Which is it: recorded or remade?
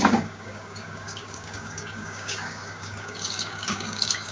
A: remade